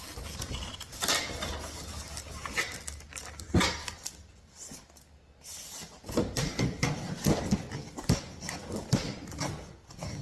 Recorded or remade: recorded